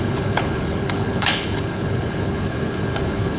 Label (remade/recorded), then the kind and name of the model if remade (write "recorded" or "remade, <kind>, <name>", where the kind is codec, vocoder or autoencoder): remade, codec, HILCodec